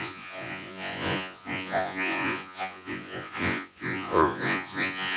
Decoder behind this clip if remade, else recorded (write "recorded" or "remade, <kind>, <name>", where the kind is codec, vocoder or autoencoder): remade, vocoder, Vocos